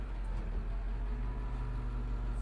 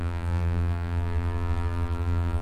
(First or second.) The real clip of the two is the first